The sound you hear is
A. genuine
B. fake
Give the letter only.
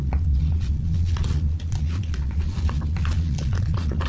B